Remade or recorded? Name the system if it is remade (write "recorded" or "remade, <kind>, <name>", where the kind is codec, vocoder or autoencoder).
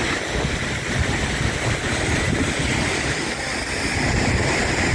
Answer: remade, vocoder, BigVGAN v2